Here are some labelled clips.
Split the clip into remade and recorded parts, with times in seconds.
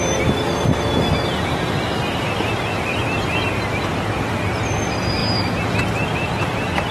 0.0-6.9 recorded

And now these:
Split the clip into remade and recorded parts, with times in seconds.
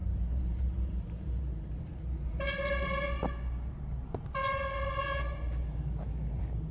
0.0-2.7 remade; 2.7-4.4 recorded; 4.4-5.0 remade; 5.0-6.7 recorded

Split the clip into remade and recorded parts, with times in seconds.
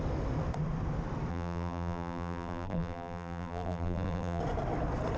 0.0-1.3 recorded; 1.3-4.4 remade; 4.4-5.2 recorded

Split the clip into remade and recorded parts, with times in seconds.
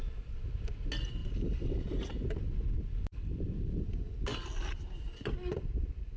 0.0-1.2 recorded; 1.2-3.8 remade; 3.8-6.2 recorded